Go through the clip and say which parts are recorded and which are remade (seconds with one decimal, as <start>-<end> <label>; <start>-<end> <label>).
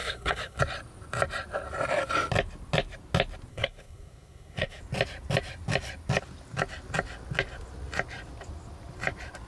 0.0-0.6 remade; 0.6-3.5 recorded; 3.5-4.8 remade; 4.8-9.5 recorded